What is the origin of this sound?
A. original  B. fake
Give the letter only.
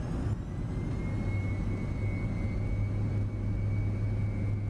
A